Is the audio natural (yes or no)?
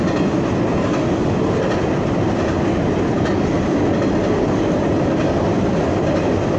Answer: yes